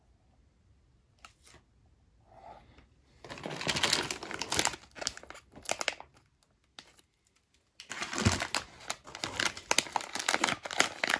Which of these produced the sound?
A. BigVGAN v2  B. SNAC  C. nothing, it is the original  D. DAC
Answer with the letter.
C